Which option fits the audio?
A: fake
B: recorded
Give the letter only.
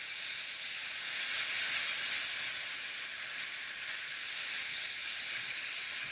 B